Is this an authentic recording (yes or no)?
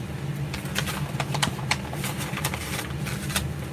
yes